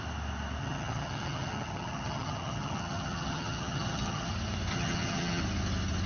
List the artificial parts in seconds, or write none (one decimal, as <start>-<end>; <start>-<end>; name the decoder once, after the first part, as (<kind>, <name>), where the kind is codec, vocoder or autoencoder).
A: 0.6-4.3 (vocoder, HiFi-GAN); 4.7-5.4